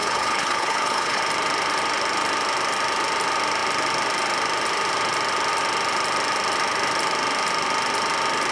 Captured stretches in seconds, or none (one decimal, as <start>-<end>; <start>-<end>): 1.2-8.5